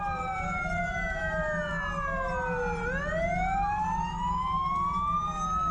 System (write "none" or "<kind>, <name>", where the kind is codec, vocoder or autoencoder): none